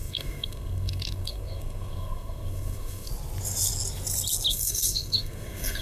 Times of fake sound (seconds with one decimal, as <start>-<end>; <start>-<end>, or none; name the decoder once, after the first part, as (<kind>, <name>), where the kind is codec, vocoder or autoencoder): 0.0-3.1 (codec, SNAC); 4.5-5.8